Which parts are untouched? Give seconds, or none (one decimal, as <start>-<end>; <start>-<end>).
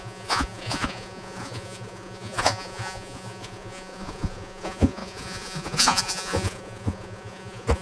none